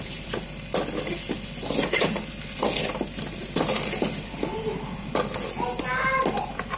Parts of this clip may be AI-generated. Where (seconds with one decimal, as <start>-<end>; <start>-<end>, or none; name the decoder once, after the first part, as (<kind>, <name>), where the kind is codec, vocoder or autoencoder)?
none